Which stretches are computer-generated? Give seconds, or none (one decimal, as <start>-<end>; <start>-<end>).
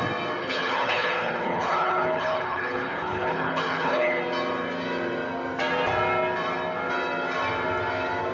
0.4-4.2